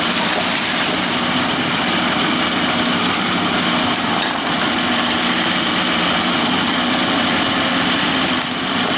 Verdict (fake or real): fake